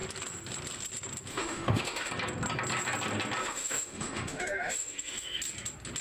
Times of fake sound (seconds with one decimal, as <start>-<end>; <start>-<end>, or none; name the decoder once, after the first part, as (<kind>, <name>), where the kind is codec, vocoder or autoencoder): 1.3-2.1 (autoencoder, DAC-VAE); 3.4-5.4